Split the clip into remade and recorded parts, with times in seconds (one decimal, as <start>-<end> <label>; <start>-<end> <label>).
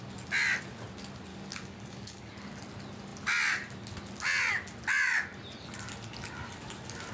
0.0-1.3 recorded; 1.3-2.3 remade; 2.3-7.1 recorded